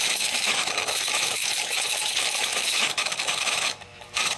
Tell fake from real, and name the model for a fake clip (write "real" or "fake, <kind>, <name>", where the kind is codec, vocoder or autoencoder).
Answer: fake, autoencoder, DAC-VAE